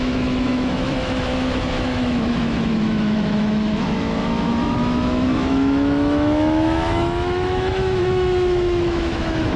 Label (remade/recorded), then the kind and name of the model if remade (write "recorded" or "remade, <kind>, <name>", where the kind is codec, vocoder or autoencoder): remade, autoencoder, DAC-VAE